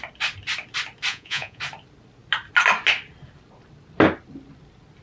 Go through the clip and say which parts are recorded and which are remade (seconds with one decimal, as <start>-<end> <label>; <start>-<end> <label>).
0.0-1.1 recorded; 1.1-1.6 remade; 1.6-5.0 recorded